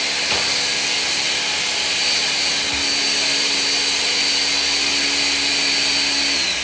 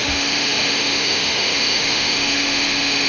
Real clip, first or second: first